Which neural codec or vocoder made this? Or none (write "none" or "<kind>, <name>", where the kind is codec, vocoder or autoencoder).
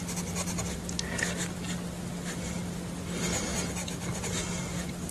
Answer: none